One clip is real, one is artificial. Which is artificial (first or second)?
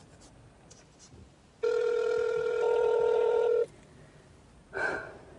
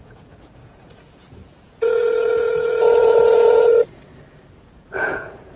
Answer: second